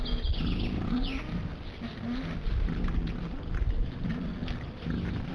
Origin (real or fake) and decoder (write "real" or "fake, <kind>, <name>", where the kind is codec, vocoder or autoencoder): real